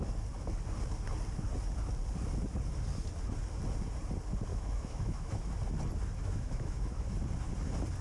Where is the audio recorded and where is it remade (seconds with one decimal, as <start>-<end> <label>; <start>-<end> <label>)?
0.0-4.5 recorded; 4.5-5.5 remade; 5.5-6.2 recorded; 6.2-7.1 remade; 7.1-8.0 recorded